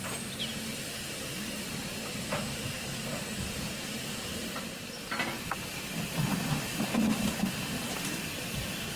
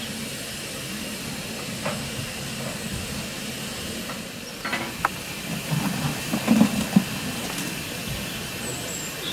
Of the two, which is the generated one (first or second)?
first